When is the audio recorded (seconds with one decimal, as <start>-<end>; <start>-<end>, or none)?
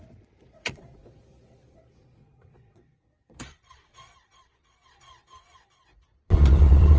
none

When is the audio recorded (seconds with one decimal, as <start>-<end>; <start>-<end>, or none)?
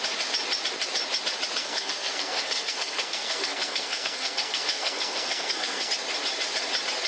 0.0-1.6; 5.9-7.1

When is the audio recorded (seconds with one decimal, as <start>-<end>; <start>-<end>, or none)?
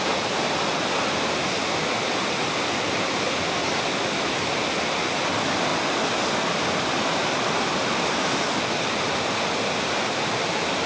0.0-3.9; 4.5-10.9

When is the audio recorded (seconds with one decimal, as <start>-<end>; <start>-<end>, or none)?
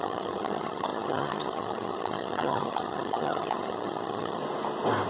4.4-5.1